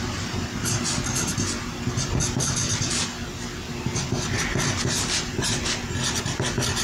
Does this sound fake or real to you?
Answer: real